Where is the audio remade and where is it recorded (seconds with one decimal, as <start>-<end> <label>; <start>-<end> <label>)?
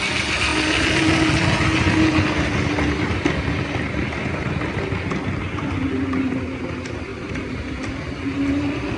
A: 0.0-7.1 recorded; 7.1-7.9 remade; 7.9-9.0 recorded